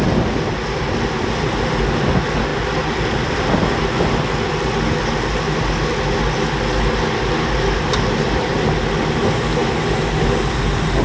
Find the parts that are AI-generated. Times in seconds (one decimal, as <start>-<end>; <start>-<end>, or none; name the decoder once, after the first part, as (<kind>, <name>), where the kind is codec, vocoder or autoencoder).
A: none